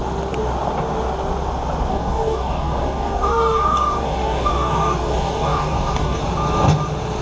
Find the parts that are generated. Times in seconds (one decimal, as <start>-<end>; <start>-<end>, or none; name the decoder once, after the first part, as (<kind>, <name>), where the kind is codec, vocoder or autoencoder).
1.9-6.2 (codec, DAC)